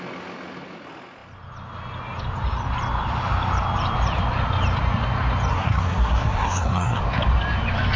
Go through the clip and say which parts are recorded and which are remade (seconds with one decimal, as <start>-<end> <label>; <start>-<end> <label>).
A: 0.0-5.5 recorded; 5.5-7.0 remade; 7.0-8.0 recorded